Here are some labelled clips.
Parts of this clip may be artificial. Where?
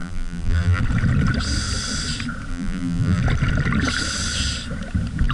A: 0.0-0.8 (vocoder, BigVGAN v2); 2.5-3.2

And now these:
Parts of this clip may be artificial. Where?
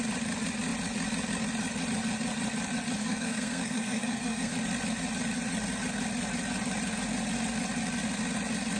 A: 3.0-4.5 (codec, SNAC)